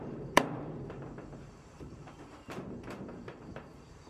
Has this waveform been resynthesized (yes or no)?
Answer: yes